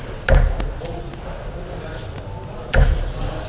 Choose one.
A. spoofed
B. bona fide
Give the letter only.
B